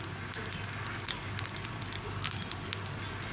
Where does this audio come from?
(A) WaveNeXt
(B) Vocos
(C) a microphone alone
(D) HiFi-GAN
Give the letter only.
C